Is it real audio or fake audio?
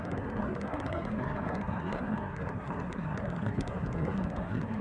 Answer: fake